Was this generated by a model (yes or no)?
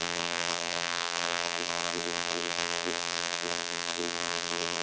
yes